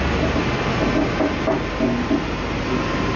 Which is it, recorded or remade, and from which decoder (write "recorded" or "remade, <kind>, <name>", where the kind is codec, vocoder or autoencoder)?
recorded